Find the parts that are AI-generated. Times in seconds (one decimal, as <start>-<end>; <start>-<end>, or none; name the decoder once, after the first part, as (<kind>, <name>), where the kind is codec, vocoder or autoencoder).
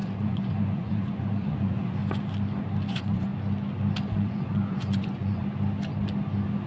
0.0-2.0 (vocoder, Vocos); 2.9-3.3; 4.1-5.4